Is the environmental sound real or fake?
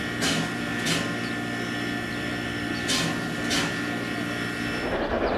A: real